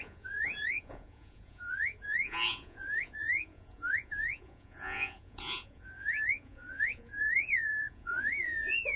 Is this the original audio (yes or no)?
no